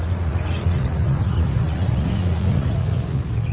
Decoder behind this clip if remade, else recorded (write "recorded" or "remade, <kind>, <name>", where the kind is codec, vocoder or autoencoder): remade, vocoder, Vocos